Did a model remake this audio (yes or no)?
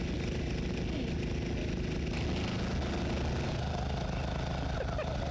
no